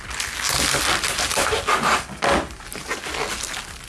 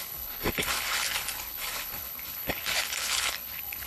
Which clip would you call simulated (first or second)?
second